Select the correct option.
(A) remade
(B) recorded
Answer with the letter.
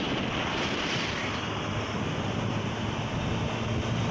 B